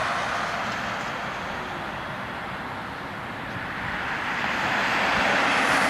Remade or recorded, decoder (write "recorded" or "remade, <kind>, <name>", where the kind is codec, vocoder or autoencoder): recorded